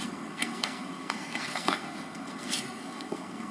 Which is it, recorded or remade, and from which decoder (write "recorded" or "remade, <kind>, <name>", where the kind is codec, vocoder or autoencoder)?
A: remade, codec, SNAC